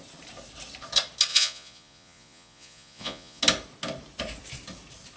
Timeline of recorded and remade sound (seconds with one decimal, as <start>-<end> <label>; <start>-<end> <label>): 0.0-1.3 recorded; 1.3-3.4 remade; 3.4-5.2 recorded